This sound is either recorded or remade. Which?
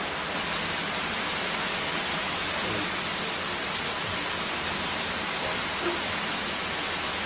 recorded